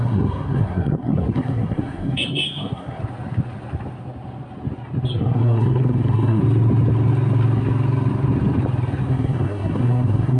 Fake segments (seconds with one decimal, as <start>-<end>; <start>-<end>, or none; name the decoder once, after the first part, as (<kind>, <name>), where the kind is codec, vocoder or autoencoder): 0.0-3.0 (codec, SNAC); 5.1-6.4; 9.1-10.4